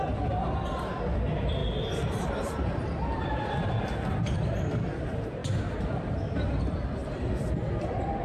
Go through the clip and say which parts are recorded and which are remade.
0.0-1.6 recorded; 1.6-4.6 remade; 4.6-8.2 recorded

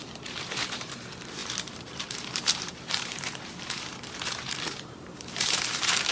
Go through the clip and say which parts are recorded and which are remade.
0.0-6.1 remade

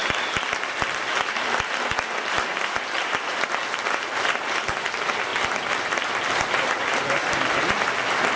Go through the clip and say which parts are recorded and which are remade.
0.0-8.4 recorded

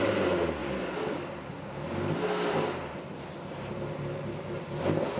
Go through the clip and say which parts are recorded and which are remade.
0.0-5.2 recorded

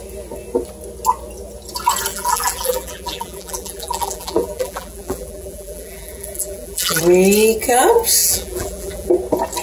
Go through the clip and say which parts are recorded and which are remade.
0.0-2.1 recorded; 2.1-7.0 remade; 7.0-8.2 recorded; 8.2-9.1 remade; 9.1-9.6 recorded

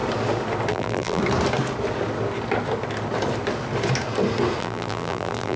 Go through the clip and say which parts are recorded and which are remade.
0.0-0.7 recorded; 0.7-1.2 remade; 1.2-4.6 recorded; 4.6-5.6 remade

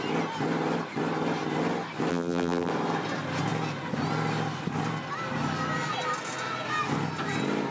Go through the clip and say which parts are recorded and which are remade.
0.0-2.1 recorded; 2.1-2.7 remade; 2.7-7.7 recorded

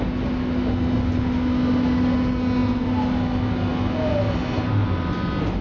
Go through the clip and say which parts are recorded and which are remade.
0.0-5.6 recorded